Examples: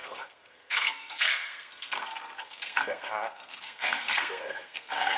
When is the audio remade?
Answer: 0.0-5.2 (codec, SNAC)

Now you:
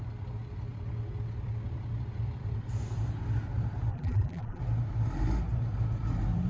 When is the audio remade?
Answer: 3.9-4.6 (vocoder, BigVGAN v2)

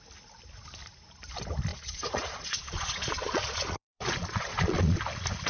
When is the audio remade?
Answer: 1.7-5.0 (vocoder, Vocos)